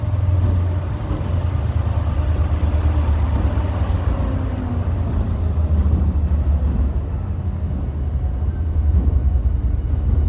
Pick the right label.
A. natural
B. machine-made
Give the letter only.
A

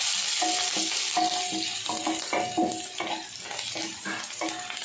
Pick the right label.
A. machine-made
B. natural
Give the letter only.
B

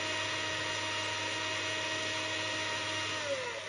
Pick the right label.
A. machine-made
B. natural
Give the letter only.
B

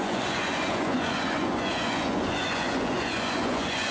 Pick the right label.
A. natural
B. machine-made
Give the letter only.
B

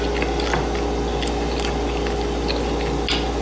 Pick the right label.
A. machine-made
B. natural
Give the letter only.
B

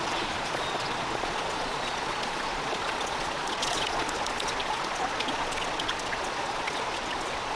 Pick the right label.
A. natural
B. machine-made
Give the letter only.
B